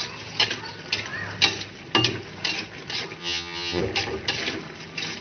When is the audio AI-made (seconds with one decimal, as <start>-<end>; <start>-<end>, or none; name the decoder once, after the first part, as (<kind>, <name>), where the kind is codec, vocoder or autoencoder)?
3.2-3.8 (vocoder, HiFi-GAN)